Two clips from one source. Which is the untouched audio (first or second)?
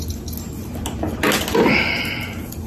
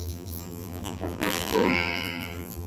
first